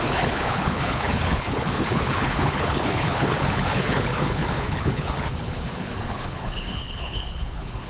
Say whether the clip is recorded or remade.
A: remade